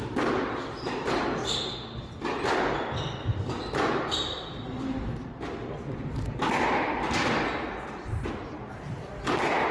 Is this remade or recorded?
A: recorded